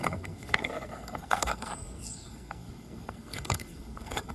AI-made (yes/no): yes